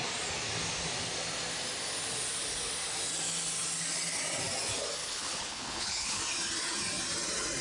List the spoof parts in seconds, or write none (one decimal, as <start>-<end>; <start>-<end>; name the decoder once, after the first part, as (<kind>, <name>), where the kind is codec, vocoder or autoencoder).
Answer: 5.0-6.2 (codec, HILCodec)